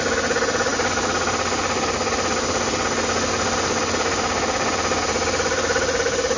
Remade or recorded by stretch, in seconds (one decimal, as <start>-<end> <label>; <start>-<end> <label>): 0.0-6.4 recorded